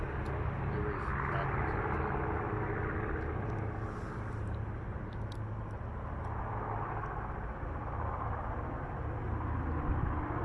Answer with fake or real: real